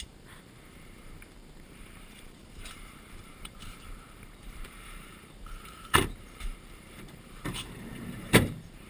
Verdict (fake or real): fake